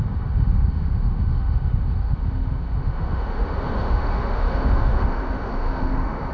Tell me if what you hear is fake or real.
fake